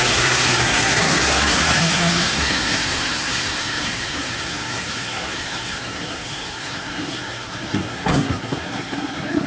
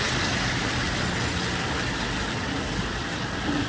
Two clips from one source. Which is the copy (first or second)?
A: first